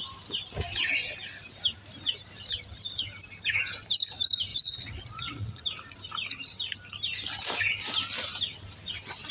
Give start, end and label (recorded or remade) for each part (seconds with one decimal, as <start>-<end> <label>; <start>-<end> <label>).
0.0-4.5 recorded; 4.5-5.6 remade; 5.6-9.3 recorded